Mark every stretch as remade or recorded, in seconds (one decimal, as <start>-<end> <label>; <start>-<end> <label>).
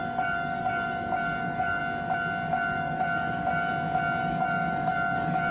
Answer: 0.0-1.8 remade; 1.8-2.5 recorded; 2.5-3.7 remade; 3.7-4.2 recorded; 4.2-5.5 remade